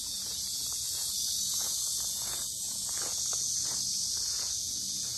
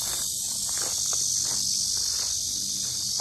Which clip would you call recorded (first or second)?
second